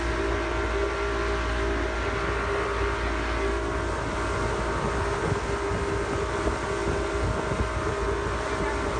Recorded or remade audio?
recorded